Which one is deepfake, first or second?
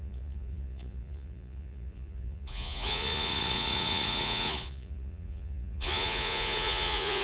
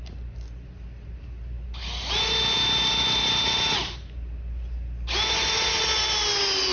first